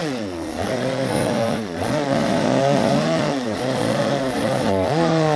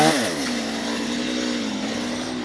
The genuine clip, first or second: second